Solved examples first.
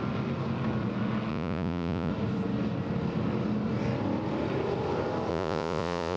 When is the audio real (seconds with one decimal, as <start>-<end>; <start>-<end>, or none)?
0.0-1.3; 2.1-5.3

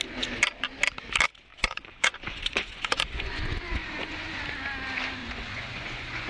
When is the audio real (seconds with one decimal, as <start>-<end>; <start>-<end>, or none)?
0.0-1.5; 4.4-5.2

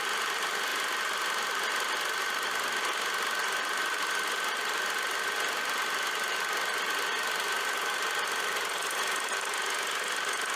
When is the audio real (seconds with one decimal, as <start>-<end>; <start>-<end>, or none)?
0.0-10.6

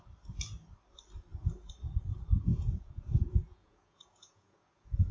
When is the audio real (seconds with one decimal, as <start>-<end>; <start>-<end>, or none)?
0.0-2.5

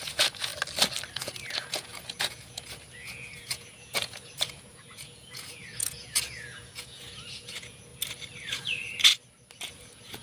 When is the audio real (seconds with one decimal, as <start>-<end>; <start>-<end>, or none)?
0.5-1.1; 7.9-8.5; 9.1-9.7

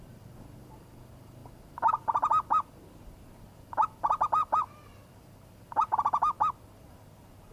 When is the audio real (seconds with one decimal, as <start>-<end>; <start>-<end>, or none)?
0.0-7.5

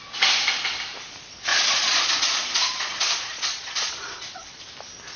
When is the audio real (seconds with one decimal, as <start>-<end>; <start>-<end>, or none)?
0.0-1.5; 4.6-5.2